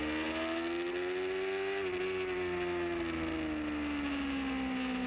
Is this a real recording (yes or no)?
yes